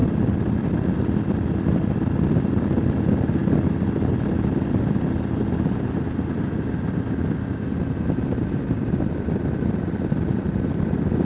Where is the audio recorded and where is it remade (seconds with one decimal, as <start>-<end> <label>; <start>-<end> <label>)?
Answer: 0.0-3.4 remade; 3.4-4.1 recorded; 4.1-11.2 remade